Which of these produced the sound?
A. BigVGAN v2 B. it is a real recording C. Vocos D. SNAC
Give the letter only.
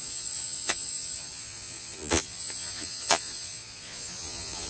C